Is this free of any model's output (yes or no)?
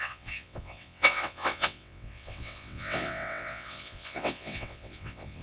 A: no